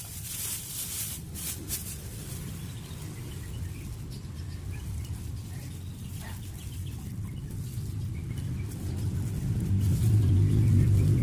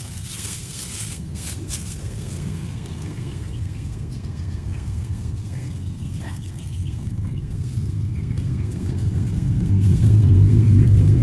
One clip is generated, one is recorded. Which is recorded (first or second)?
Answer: first